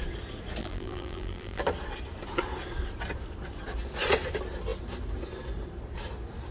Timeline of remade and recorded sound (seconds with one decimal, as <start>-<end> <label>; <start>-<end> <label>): 0.0-0.6 recorded; 0.6-1.6 remade; 1.6-6.5 recorded